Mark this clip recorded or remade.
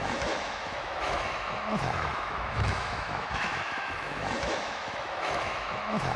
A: remade